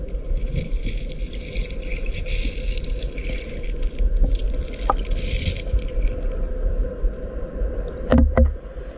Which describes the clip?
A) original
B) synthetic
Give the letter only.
A